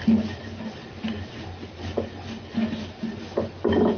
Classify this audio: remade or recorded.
recorded